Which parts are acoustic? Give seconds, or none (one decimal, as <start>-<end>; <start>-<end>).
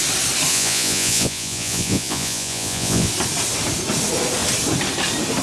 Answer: 0.0-0.5; 3.1-5.4